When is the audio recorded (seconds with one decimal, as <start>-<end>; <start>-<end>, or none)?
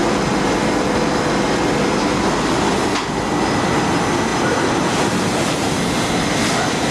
0.0-6.9